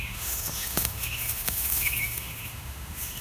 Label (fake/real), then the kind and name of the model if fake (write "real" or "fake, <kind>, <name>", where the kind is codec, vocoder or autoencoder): fake, autoencoder, DAC-VAE